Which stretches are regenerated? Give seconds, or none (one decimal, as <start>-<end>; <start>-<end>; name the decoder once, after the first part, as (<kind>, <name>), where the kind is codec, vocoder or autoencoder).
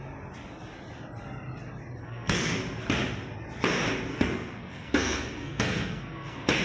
2.0-2.6 (codec, SNAC); 4.1-6.6